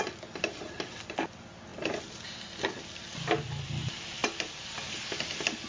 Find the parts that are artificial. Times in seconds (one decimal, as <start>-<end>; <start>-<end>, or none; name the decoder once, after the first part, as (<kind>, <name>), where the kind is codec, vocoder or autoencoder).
none